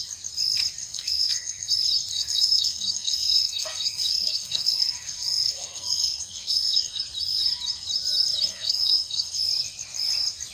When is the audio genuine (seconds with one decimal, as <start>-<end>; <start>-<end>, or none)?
0.0-0.8; 1.7-2.1; 7.0-8.5; 9.4-10.5